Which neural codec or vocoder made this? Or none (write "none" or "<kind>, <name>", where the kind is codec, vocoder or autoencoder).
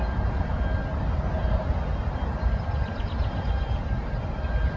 none